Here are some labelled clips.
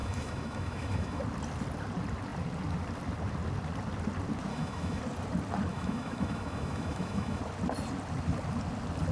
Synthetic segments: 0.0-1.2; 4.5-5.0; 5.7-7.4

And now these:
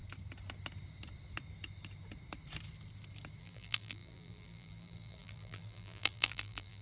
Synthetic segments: 3.4-6.8

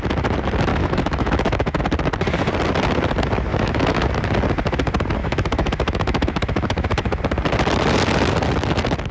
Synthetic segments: 0.7-1.8; 3.5-4.1; 5.2-7.2

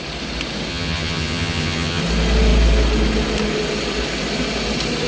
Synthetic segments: 0.7-2.0

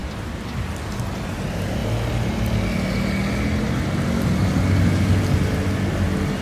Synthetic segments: none

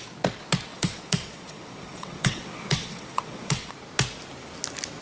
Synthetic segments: 0.7-3.7